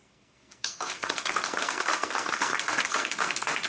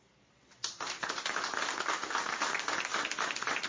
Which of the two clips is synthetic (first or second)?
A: first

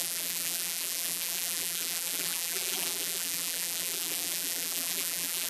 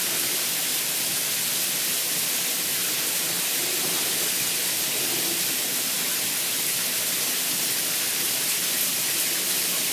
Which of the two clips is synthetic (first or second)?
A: first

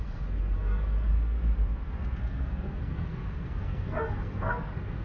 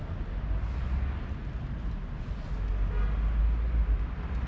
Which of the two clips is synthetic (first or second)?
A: first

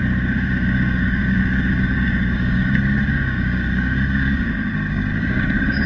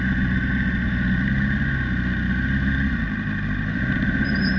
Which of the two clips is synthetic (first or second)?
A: first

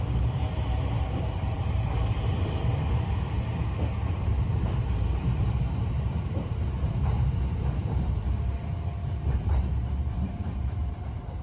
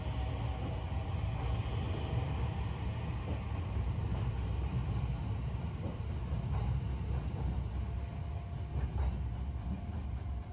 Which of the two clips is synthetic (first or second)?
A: first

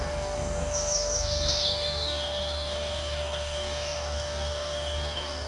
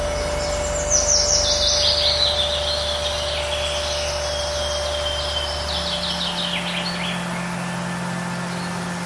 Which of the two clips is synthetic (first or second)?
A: first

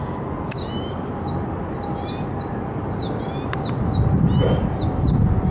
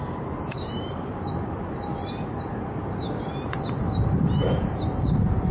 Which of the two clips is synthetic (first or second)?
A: second